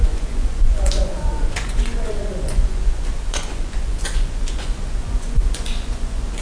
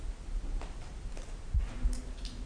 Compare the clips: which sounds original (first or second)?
second